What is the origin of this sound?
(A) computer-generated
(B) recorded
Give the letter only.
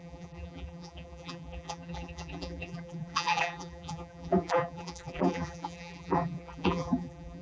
A